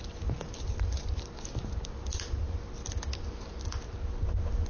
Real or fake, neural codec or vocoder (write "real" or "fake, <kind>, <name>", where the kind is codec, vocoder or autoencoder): real